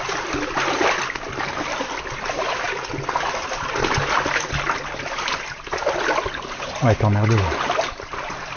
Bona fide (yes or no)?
yes